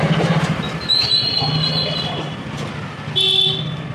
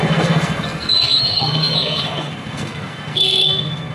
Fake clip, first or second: second